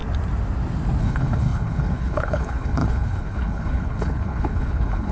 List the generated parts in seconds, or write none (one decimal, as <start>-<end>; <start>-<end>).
1.0-5.1